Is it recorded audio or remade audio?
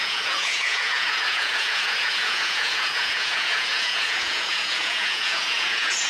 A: remade